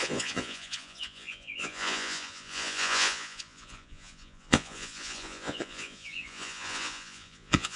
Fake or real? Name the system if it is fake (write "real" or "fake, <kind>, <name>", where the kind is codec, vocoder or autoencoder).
fake, vocoder, Vocos